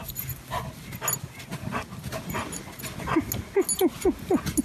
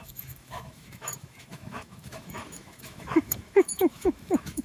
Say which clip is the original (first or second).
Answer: first